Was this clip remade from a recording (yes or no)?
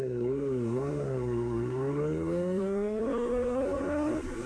yes